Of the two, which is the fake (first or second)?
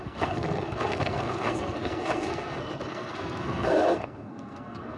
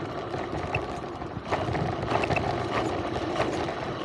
first